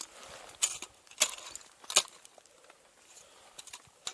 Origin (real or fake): real